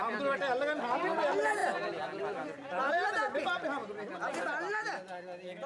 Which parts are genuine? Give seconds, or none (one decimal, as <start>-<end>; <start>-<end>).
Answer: 0.0-5.7